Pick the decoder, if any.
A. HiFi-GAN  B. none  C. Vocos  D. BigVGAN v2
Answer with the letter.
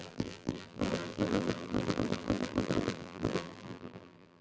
D